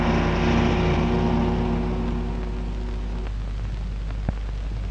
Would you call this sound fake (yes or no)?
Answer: no